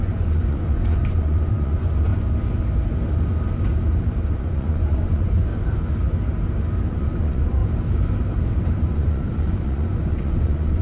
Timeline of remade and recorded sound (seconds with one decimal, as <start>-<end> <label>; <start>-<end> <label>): 0.0-2.1 remade; 2.1-4.3 recorded; 4.3-5.5 remade; 5.5-6.9 recorded; 6.9-7.6 remade; 7.6-8.9 recorded; 8.9-10.8 remade